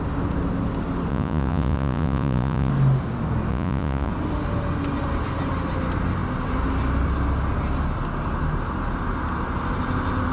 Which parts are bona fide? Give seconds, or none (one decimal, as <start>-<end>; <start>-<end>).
0.0-1.1; 2.7-3.5; 4.1-10.3